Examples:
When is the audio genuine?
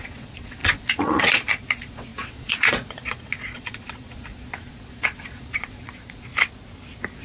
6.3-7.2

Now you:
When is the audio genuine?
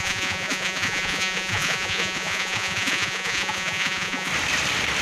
4.3-5.0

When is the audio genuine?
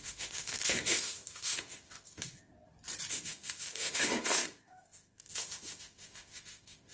2.5-3.1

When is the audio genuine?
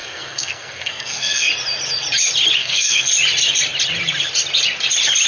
1.5-2.6; 3.1-5.3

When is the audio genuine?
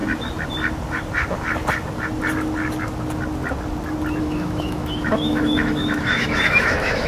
0.0-4.2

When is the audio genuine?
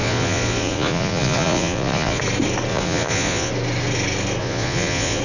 2.2-2.7; 3.5-4.4